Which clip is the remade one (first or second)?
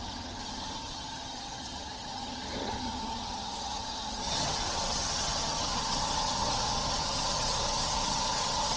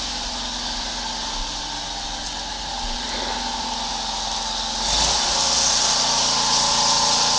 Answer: first